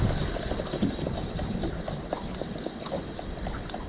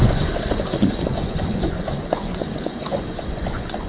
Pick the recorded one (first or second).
first